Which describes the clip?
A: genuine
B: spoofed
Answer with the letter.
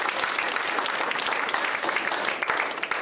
A